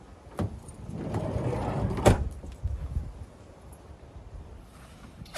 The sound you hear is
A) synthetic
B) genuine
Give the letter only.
A